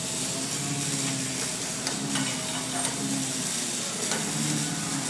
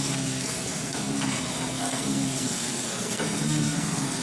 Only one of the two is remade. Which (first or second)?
second